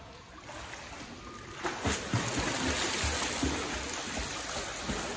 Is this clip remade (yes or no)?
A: no